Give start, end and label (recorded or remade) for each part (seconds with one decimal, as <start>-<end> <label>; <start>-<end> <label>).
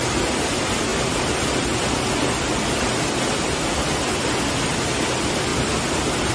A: 0.0-5.5 recorded; 5.5-6.3 remade